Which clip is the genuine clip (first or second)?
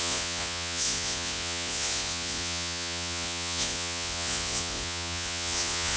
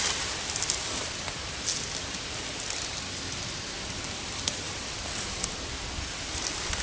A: second